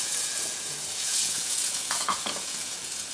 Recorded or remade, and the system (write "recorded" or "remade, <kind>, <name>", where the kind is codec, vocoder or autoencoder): remade, vocoder, Vocos